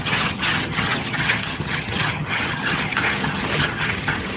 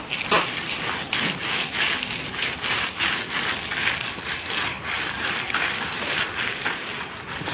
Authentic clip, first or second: second